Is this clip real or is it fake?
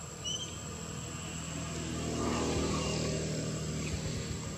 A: real